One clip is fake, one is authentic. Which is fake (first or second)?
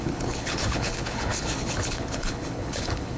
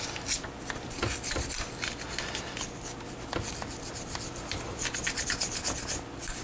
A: first